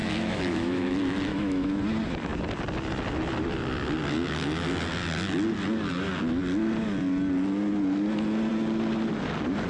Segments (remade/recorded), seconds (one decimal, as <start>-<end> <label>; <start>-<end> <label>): 0.0-1.7 remade; 1.7-9.7 recorded